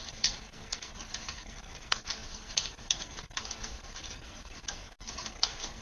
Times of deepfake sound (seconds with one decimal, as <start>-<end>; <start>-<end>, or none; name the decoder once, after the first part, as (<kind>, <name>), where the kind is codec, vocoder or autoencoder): 0.0-5.8 (codec, SNAC)